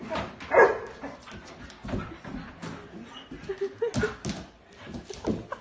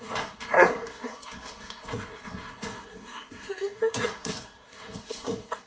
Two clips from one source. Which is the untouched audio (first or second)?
first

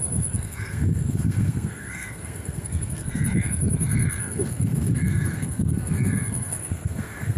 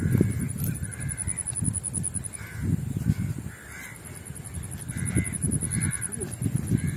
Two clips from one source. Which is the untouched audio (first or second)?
second